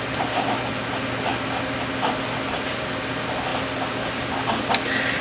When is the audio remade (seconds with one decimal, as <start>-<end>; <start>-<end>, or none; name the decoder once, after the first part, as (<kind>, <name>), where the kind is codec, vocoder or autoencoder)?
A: none